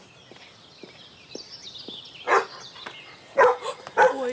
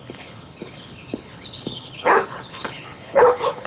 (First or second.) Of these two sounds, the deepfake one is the second